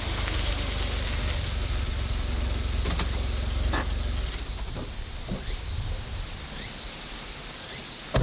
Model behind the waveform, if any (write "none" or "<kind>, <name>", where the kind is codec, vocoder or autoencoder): none